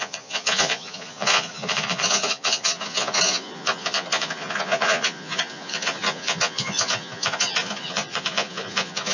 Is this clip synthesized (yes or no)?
yes